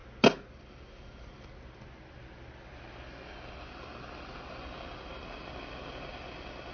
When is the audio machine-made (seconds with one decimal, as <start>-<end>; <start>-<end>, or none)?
none